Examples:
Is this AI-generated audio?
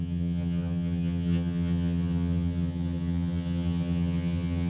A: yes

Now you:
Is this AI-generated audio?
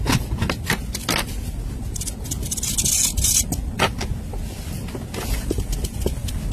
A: no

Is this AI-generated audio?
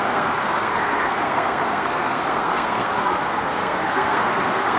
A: yes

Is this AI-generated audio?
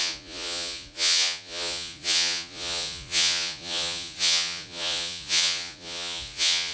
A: yes